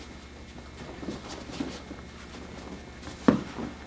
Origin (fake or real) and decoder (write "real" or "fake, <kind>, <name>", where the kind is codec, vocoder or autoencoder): real